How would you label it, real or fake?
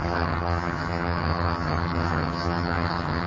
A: fake